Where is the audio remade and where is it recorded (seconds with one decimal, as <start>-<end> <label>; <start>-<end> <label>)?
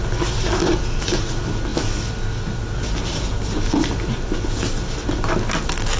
0.0-6.0 recorded